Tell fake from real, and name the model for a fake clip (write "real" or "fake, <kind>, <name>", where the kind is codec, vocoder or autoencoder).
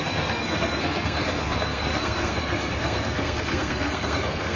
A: fake, codec, SNAC